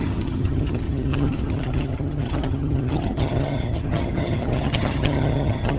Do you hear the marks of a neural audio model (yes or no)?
yes